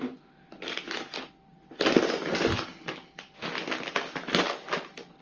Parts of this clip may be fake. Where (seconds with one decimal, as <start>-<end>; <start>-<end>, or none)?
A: none